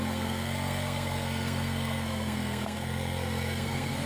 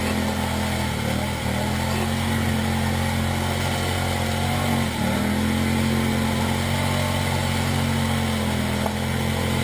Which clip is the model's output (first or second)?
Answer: first